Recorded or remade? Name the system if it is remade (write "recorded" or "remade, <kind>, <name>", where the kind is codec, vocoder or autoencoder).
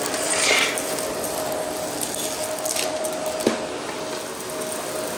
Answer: recorded